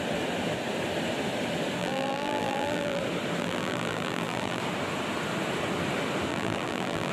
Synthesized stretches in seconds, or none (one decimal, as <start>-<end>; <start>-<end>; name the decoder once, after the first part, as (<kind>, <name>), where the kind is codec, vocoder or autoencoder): 1.8-3.0 (vocoder, BigVGAN v2); 3.4-4.6; 6.3-7.1